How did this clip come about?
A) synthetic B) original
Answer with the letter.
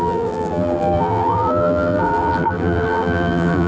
A